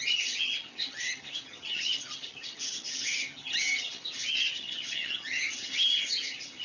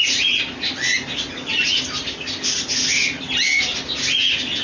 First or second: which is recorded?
second